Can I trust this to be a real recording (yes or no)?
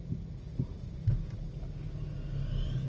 yes